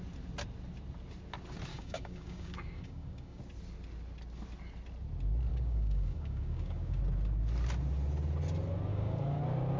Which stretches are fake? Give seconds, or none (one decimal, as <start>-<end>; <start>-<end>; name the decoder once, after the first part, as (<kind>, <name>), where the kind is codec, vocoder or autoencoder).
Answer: 1.7-3.4 (codec, DAC); 5.5-7.0; 8.9-9.4